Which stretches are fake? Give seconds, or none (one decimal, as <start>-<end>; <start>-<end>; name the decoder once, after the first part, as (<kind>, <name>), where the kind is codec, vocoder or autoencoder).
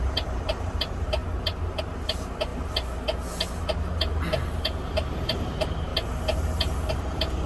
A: 0.0-2.5 (vocoder, BigVGAN v2); 3.5-5.9; 6.9-7.5